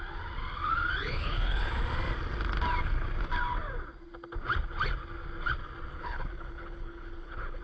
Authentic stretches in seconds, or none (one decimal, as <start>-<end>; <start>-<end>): 0.0-1.0; 1.7-5.9